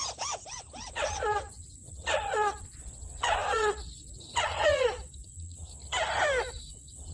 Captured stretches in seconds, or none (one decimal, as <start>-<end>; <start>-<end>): 0.0-0.5; 5.7-6.5